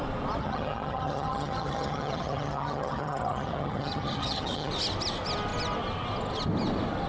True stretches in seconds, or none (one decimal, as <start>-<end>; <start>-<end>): 0.0-0.4; 4.7-7.1